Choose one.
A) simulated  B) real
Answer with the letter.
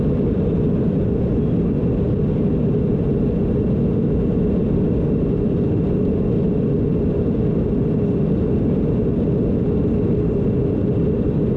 B